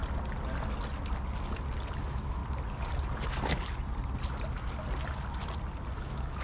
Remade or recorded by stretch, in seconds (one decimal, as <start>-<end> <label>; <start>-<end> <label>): 0.0-2.0 recorded; 2.0-2.4 remade; 2.4-6.0 recorded; 6.0-6.4 remade